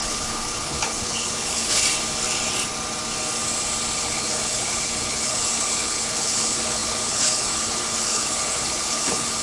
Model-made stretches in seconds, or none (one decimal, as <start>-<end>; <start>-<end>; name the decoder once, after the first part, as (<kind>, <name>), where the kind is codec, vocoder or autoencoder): 0.0-1.8 (codec, HILCodec); 4.0-9.4